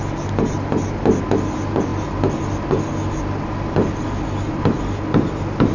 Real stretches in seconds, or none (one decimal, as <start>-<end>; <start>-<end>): 0.0-5.7